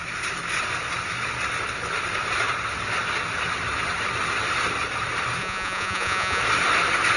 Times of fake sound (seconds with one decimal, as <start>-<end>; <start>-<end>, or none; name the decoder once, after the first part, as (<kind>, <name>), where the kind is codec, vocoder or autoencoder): 5.4-6.4 (vocoder, Vocos)